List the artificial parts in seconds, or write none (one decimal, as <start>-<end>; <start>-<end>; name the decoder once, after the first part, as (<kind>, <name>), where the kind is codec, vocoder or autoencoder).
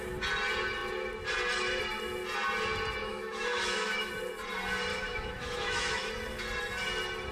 3.0-4.1 (autoencoder, DAC-VAE); 4.9-6.1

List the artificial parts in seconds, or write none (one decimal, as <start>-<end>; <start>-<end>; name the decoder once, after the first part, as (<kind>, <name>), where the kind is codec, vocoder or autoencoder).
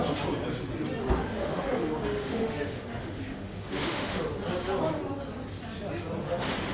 1.0-4.2 (autoencoder, DAC-VAE); 6.2-6.7